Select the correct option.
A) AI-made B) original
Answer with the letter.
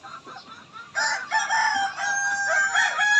B